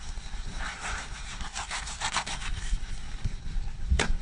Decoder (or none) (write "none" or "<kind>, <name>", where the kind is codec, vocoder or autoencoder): codec, SNAC